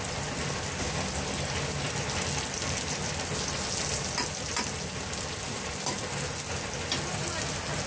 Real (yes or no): yes